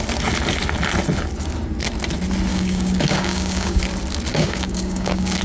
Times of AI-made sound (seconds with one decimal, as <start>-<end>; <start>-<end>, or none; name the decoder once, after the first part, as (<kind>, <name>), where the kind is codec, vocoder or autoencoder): 2.5-3.8 (codec, DAC); 4.3-5.4

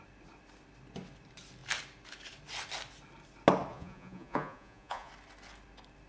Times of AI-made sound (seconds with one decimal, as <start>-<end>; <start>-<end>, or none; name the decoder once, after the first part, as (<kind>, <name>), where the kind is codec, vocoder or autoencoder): 3.7-5.1 (vocoder, Vocos)

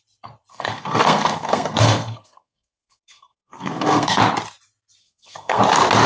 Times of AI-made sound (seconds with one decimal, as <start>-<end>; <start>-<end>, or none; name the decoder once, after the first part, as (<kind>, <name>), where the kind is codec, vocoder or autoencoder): 0.5-4.2 (codec, SNAC); 5.0-5.6

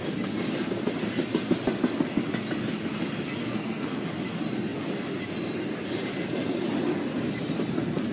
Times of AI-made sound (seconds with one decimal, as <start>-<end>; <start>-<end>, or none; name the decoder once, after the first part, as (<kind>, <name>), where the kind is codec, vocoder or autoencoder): 3.4-4.0 (codec, SNAC)